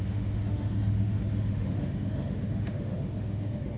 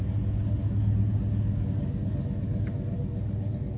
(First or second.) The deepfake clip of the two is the first